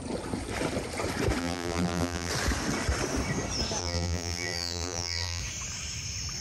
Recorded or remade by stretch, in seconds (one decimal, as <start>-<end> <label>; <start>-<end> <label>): 0.0-1.4 recorded; 1.4-2.3 remade; 2.3-3.8 recorded; 3.8-5.4 remade; 5.4-6.4 recorded